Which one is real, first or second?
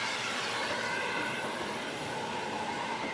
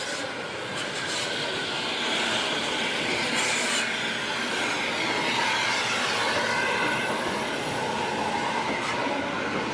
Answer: second